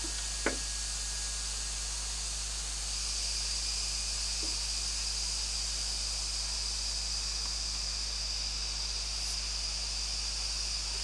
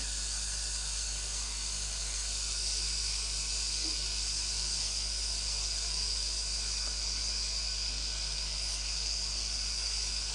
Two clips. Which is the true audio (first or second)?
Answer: first